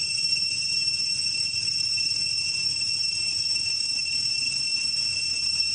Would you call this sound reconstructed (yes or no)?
yes